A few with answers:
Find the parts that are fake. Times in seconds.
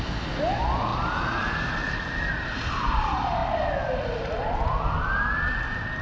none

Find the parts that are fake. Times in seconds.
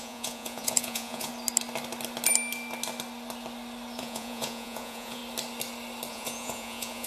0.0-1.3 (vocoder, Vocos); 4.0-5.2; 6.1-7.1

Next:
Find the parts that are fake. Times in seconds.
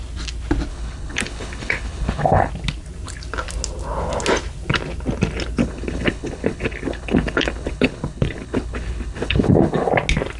0.7-2.5 (codec, HILCodec); 5.6-9.9